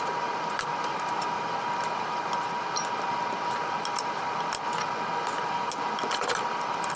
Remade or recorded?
recorded